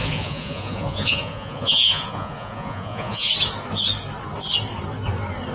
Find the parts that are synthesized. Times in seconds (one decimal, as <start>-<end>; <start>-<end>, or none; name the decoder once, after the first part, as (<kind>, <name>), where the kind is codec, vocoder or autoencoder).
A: 0.0-3.3 (vocoder, Vocos)